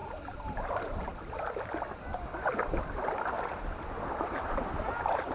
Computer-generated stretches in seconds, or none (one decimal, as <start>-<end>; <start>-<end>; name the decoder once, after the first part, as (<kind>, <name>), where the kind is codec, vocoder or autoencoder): 0.0-1.1 (vocoder, BigVGAN v2); 4.3-5.3

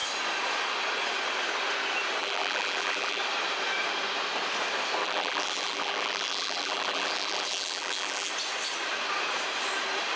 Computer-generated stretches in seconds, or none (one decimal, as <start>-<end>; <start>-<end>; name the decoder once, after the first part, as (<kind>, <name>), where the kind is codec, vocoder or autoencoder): 2.2-3.2 (vocoder, BigVGAN v2); 5.0-8.3

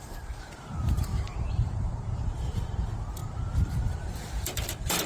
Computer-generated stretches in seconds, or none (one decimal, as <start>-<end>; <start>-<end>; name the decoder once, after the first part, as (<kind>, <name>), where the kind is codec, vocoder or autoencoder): 0.0-3.2 (vocoder, BigVGAN v2); 3.7-5.1

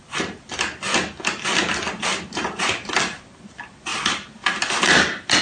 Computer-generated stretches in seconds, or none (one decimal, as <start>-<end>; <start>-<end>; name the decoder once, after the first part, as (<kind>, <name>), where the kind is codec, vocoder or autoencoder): 0.0-0.5 (vocoder, BigVGAN v2); 2.1-3.2

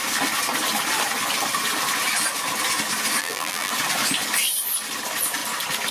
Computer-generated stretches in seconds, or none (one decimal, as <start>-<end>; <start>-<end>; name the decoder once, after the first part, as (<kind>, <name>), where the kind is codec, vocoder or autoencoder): 3.2-3.7 (vocoder, BigVGAN v2)